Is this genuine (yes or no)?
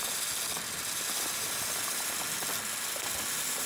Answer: yes